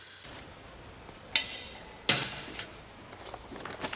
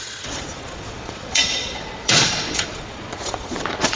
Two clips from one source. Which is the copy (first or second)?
second